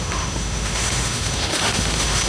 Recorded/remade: remade